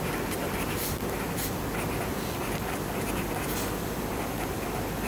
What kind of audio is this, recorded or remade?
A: recorded